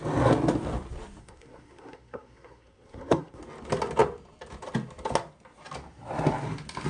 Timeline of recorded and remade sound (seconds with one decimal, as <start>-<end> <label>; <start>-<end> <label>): 0.0-1.2 recorded; 1.2-3.4 remade; 3.4-6.9 recorded